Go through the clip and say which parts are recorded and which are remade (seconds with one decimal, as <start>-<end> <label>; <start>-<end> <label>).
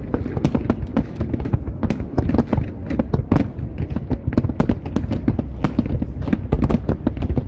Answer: 0.0-0.9 recorded; 0.9-2.3 remade; 2.3-7.5 recorded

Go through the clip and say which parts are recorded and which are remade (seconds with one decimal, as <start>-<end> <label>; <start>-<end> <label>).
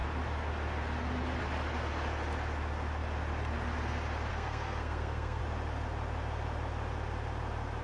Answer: 0.0-4.3 recorded; 4.3-5.4 remade; 5.4-7.8 recorded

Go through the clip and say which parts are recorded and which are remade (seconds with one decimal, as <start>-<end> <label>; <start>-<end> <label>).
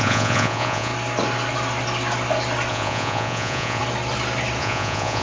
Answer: 0.0-0.9 remade; 0.9-2.7 recorded; 2.7-3.8 remade; 3.8-4.6 recorded; 4.6-5.2 remade